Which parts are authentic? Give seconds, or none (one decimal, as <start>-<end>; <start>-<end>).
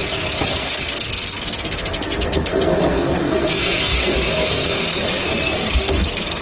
0.0-0.5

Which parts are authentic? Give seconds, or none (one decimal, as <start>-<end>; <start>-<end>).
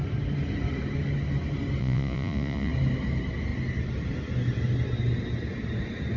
0.0-1.8; 2.7-6.2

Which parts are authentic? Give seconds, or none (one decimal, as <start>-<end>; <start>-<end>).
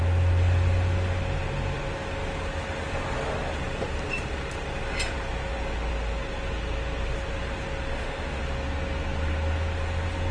0.0-7.9; 8.4-10.3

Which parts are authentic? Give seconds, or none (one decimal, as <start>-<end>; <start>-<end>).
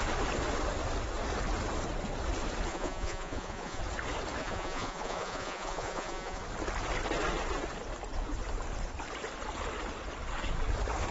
0.0-2.7; 3.8-4.4; 6.4-11.1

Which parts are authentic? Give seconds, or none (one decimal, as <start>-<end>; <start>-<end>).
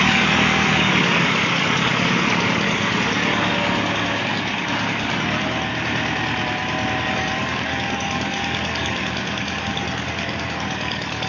5.7-7.0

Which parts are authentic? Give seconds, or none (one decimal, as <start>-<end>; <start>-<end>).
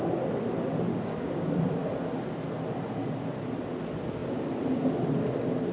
0.0-0.9; 1.5-5.7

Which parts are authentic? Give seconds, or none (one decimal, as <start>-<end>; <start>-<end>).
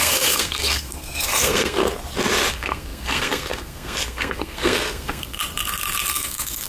1.8-2.5; 5.4-6.1